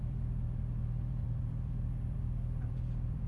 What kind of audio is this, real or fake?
fake